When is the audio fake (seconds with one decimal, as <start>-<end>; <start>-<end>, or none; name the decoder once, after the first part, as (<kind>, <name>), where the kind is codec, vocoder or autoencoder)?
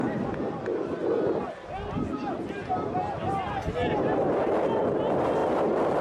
none